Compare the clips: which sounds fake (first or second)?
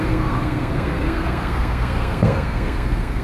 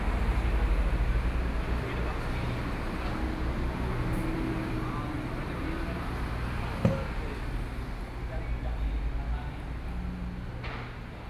first